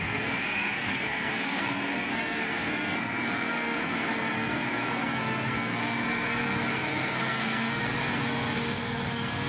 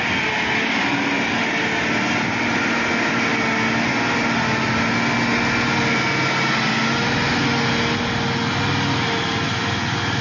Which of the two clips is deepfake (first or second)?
first